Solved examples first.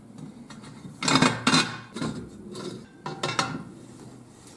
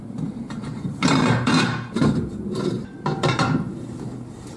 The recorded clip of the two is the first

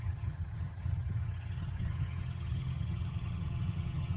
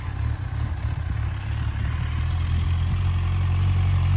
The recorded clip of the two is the second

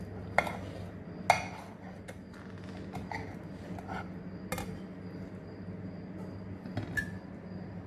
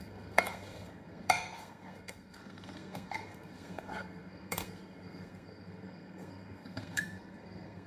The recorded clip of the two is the first